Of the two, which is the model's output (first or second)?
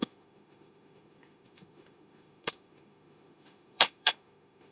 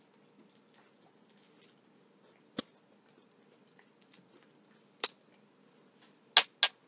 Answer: first